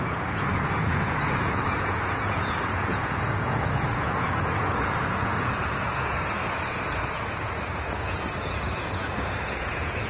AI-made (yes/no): yes